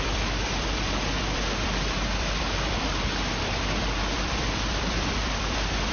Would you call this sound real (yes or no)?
no